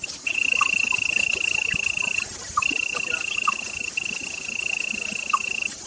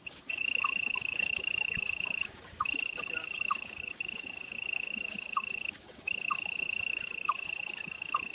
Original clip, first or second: first